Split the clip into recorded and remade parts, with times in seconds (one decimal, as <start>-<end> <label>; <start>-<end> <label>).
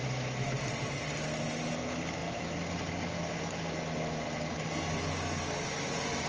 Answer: 0.0-6.3 recorded